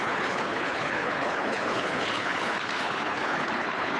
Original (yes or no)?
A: no